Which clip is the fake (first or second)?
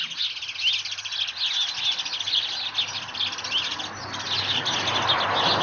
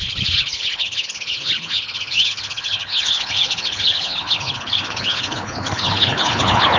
second